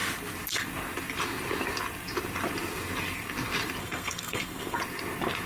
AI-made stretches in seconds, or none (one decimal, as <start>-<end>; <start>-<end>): 3.8-4.8